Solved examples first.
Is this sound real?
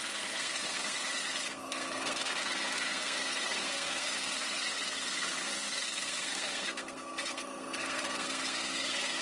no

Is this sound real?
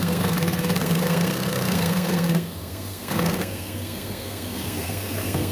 no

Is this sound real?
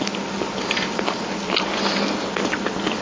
yes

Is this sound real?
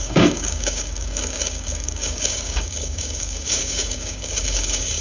no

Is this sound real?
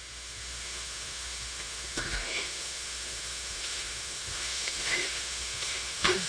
no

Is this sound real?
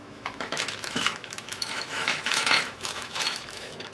no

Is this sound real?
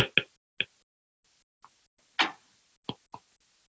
yes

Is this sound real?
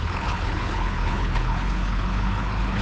no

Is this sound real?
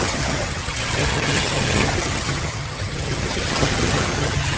no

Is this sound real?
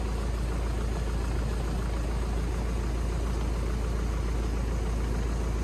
yes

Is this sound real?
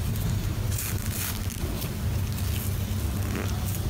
yes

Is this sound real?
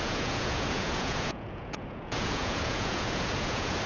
no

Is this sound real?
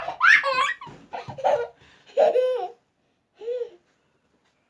yes